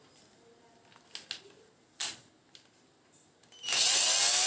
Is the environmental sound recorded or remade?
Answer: recorded